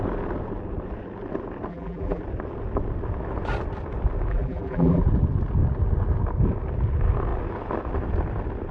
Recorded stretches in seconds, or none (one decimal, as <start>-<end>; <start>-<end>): 0.0-1.7; 2.2-4.3; 5.0-8.7